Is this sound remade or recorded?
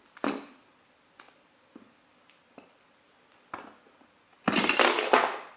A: recorded